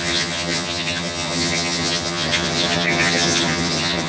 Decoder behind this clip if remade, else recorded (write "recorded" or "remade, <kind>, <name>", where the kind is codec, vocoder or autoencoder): remade, vocoder, HiFi-GAN